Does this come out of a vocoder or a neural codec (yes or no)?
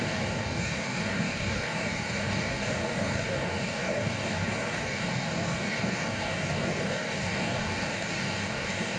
yes